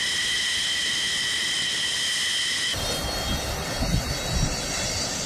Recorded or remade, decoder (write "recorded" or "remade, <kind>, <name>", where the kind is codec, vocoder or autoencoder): recorded